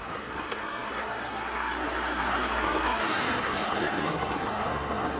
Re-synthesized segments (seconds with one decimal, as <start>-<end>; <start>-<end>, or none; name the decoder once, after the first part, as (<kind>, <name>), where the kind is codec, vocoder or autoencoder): 0.0-5.2 (codec, SNAC)

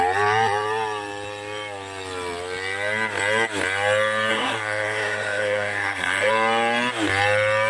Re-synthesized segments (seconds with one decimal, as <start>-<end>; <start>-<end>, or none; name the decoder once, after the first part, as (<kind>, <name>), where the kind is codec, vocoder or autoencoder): 4.3-6.3 (codec, SNAC)

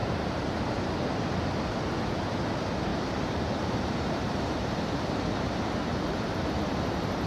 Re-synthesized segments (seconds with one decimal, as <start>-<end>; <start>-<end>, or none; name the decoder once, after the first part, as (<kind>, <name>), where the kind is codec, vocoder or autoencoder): 0.0-1.3 (vocoder, BigVGAN v2); 2.9-7.3

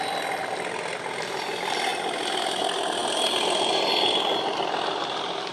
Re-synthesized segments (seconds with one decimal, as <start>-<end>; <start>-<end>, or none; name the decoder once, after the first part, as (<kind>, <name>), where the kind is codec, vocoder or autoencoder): none

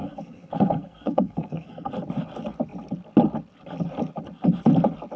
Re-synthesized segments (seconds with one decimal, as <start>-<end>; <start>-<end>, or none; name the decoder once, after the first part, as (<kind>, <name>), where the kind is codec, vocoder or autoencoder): 0.0-1.9 (codec, SNAC)

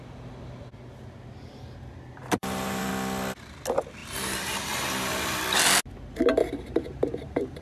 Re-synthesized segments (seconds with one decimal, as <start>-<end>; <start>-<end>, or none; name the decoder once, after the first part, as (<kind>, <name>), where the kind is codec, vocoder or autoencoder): 2.2-2.9 (vocoder, BigVGAN v2); 4.0-5.4; 6.4-7.6

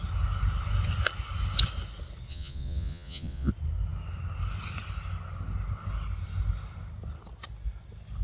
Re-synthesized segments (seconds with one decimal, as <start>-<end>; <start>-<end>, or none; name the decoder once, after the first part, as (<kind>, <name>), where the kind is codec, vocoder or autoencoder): 2.3-3.5 (vocoder, Vocos)